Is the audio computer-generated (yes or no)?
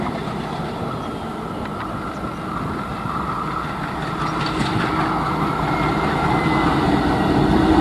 no